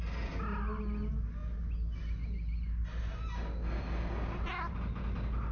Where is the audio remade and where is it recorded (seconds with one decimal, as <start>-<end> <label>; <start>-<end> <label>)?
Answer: 0.0-5.5 recorded

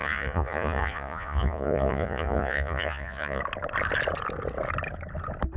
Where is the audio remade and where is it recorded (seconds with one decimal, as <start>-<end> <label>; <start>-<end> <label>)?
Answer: 0.0-3.4 remade; 3.4-5.6 recorded

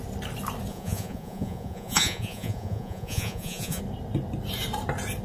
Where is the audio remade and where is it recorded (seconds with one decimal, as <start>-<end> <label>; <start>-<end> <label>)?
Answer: 0.0-0.7 recorded; 0.7-3.8 remade; 3.8-5.2 recorded

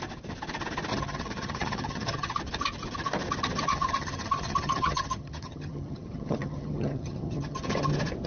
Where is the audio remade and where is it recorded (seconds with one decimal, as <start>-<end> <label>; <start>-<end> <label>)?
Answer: 0.0-0.9 recorded; 0.9-2.4 remade; 2.4-3.7 recorded; 3.7-7.9 remade; 7.9-8.3 recorded

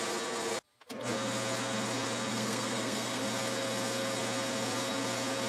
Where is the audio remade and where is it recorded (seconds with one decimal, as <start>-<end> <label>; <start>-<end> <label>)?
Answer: 0.0-2.3 recorded; 2.3-3.2 remade; 3.2-5.5 recorded

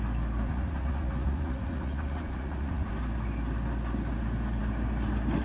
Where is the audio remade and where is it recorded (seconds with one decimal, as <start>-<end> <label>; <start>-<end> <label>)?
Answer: 0.0-0.5 recorded; 0.5-2.9 remade; 2.9-5.4 recorded